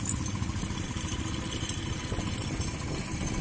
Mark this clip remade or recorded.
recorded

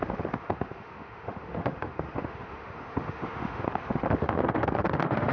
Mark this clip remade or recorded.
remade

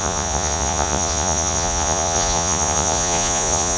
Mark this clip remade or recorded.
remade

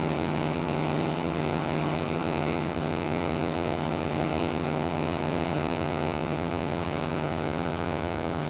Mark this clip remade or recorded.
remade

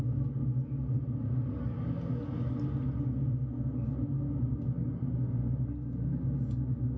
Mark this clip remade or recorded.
recorded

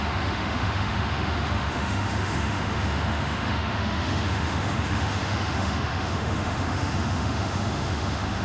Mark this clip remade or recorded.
remade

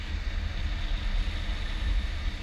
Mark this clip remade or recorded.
recorded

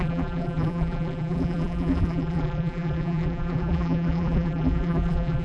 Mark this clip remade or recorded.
remade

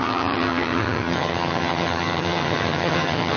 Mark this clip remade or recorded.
remade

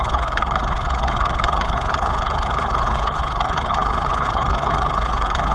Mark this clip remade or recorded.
remade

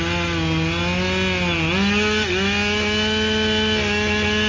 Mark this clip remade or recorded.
recorded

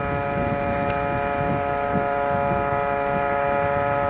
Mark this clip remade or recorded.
recorded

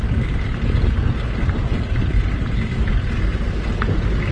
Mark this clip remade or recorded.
recorded